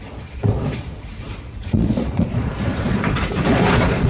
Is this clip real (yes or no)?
no